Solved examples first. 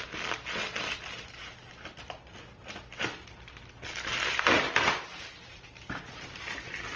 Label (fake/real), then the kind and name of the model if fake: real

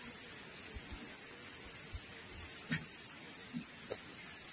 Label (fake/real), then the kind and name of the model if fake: real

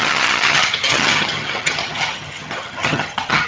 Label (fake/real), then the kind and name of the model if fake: fake, vocoder, HiFi-GAN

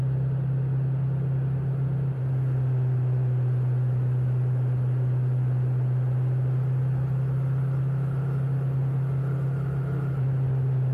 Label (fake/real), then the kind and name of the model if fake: real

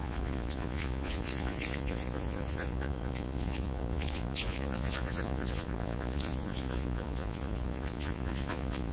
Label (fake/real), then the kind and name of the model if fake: fake, vocoder, Vocos